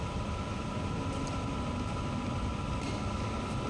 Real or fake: real